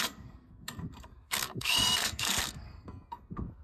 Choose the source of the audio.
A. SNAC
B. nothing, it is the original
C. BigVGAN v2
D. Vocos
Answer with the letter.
A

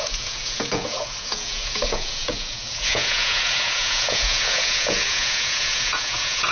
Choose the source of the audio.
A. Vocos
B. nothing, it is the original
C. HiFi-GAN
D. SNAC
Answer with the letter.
A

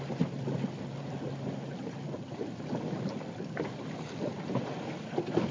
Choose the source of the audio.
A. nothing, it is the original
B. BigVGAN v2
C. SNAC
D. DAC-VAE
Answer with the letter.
A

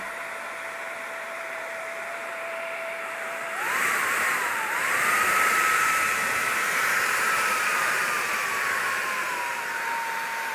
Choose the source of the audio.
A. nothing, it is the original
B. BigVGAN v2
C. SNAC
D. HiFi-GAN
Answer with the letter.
B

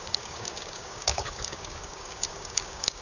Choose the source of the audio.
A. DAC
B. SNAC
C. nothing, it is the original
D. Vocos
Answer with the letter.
A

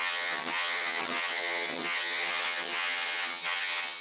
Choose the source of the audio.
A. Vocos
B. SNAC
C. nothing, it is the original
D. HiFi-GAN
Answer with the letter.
D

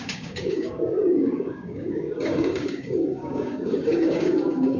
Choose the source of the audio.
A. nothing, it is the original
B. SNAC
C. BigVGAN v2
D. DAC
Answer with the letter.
D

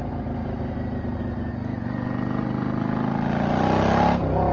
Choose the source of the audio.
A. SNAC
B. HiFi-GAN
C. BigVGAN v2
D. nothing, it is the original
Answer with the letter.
D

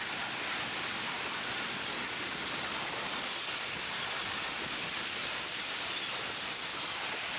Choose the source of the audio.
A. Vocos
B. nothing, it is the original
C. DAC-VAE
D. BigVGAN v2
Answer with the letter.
B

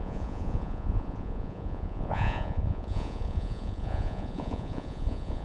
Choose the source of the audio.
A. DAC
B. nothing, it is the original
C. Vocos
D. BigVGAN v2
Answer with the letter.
C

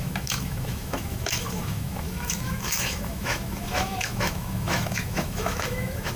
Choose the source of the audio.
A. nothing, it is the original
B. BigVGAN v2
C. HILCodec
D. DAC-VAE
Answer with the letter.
D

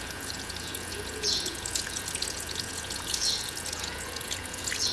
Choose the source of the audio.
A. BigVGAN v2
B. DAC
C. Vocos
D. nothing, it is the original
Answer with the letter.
C